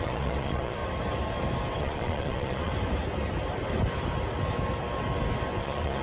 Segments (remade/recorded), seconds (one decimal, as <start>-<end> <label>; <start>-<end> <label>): 0.0-0.8 remade; 0.8-1.8 recorded; 1.8-2.7 remade; 2.7-5.6 recorded; 5.6-6.0 remade